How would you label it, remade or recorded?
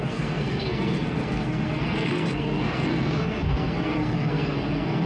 remade